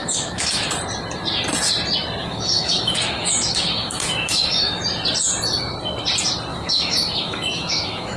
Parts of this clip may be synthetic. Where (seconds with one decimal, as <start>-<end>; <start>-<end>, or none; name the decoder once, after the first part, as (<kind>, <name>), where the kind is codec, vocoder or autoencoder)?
0.0-0.7 (autoencoder, DAC-VAE); 2.2-4.8; 6.5-8.2